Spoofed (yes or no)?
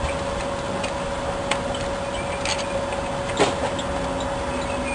no